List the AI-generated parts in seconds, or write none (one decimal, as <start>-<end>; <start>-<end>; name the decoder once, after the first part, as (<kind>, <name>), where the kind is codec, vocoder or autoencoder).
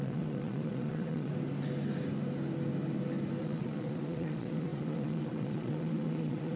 0.0-1.3 (vocoder, Vocos); 3.4-6.6